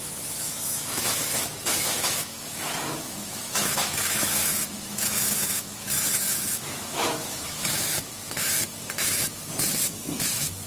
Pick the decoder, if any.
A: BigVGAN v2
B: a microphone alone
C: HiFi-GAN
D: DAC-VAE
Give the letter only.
D